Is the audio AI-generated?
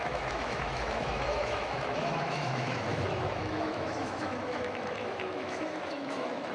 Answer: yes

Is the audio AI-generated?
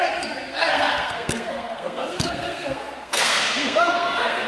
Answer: yes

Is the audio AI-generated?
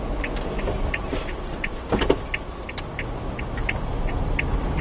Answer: no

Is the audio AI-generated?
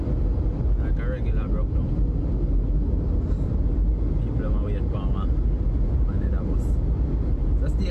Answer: no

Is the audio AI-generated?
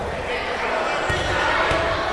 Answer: no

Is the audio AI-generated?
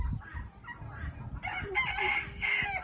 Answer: no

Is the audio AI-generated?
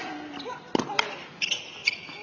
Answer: no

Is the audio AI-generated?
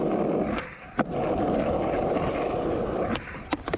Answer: no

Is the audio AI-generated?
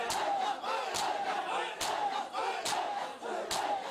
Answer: no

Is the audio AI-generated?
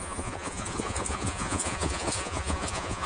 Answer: yes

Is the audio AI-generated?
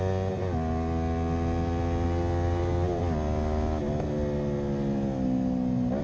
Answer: no